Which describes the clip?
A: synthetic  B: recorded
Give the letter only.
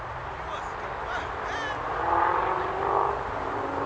B